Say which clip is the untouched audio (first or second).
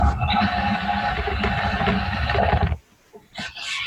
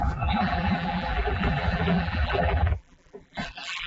first